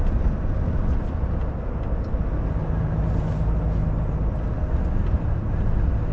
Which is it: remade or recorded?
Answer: recorded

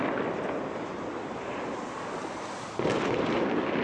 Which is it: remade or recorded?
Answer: recorded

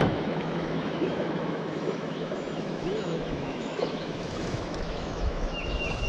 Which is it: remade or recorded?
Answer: remade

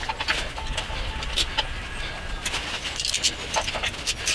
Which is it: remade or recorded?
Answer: recorded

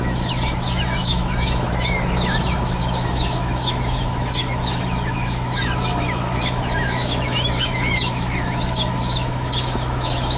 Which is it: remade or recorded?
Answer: remade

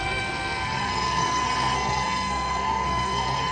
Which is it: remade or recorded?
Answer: remade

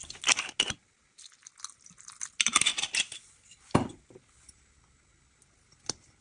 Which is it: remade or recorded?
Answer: recorded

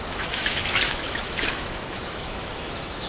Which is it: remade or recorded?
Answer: remade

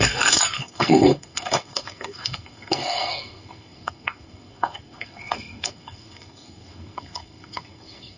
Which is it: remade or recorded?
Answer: remade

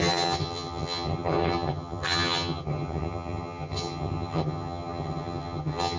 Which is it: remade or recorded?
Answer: remade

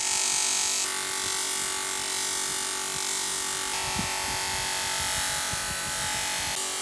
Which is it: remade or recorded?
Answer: recorded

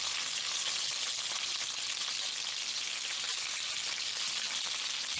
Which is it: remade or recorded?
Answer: recorded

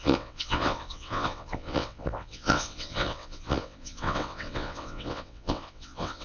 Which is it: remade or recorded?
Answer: remade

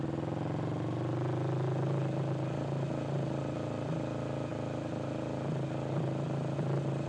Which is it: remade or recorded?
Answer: recorded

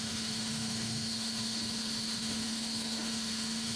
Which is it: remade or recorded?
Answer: remade